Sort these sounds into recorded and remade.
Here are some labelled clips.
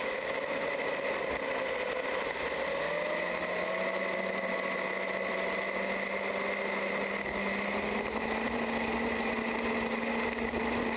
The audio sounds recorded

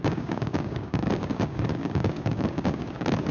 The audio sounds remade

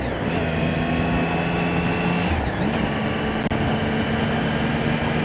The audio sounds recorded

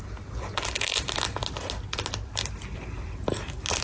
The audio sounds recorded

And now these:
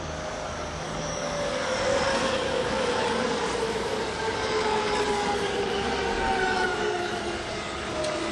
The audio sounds remade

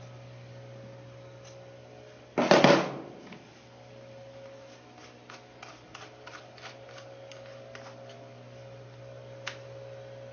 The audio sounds recorded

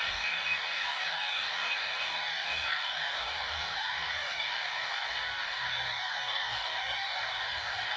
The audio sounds remade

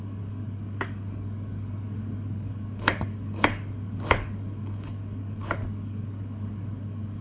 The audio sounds remade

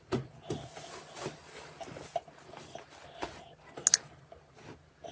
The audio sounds recorded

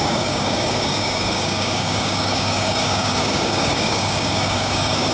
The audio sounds remade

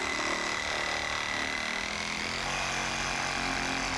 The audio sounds recorded